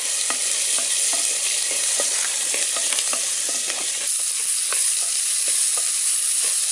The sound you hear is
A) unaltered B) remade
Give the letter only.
A